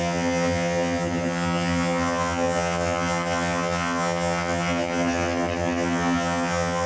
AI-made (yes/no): yes